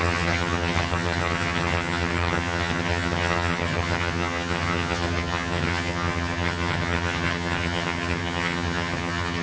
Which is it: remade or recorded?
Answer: remade